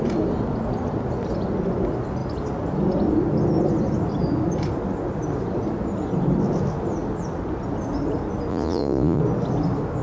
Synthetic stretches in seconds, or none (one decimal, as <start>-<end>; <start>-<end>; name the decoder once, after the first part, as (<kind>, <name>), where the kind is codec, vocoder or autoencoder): 8.5-9.2 (vocoder, Vocos)